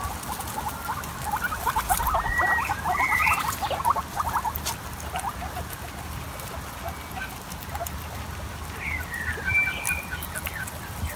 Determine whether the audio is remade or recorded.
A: recorded